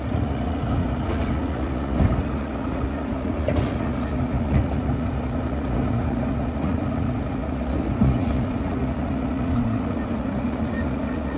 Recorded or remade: remade